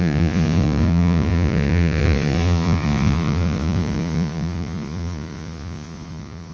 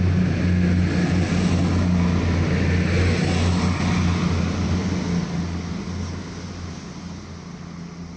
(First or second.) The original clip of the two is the second